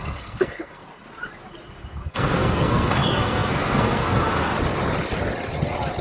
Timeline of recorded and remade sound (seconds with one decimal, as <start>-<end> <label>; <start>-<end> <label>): 0.0-0.8 remade; 0.8-2.1 recorded; 2.1-4.5 remade; 4.5-6.0 recorded